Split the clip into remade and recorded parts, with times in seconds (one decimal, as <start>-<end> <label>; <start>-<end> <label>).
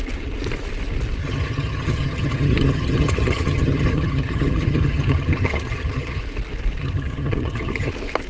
0.0-1.2 recorded; 1.2-6.2 remade; 6.2-6.8 recorded; 6.8-7.9 remade; 7.9-8.3 recorded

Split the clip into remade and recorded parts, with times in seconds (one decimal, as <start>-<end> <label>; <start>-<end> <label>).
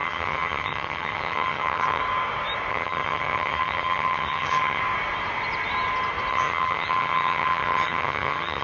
0.0-2.0 remade; 2.0-2.7 recorded; 2.7-4.8 remade; 4.8-6.3 recorded; 6.3-8.6 remade